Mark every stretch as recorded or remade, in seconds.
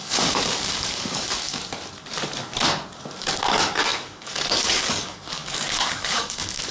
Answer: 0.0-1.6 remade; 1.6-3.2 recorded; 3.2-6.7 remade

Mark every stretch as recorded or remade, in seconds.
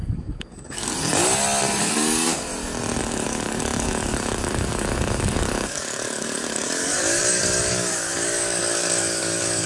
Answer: 0.0-0.9 remade; 0.9-1.8 recorded; 1.8-2.5 remade; 2.5-3.0 recorded; 3.0-9.7 remade